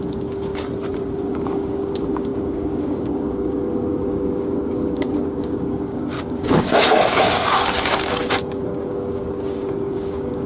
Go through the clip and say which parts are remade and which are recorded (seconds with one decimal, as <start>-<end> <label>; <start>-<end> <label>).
0.0-0.5 remade; 0.5-1.2 recorded; 1.2-10.5 remade